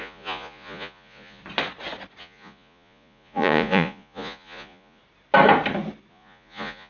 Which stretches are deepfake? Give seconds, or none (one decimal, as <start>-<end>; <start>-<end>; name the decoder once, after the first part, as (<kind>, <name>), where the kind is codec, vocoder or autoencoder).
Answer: 0.0-1.4 (vocoder, Vocos); 2.2-5.0; 6.1-6.9